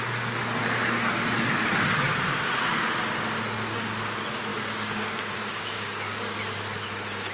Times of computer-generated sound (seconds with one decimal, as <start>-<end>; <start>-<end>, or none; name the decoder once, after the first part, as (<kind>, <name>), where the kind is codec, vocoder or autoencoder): 4.5-6.4 (codec, DAC)